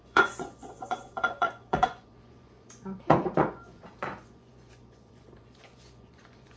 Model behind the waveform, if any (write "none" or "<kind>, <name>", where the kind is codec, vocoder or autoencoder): vocoder, Vocos